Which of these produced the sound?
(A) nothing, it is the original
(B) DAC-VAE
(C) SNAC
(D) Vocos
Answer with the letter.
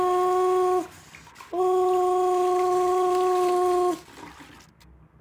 A